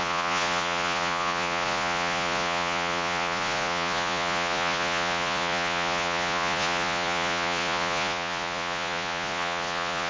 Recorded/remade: remade